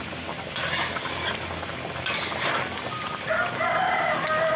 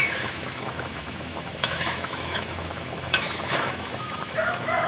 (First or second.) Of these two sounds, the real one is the first